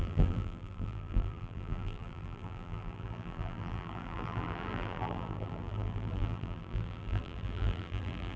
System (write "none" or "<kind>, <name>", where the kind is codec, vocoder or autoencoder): vocoder, BigVGAN v2